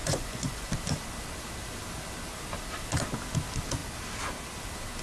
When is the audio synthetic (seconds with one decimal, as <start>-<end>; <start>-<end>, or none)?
0.0-0.7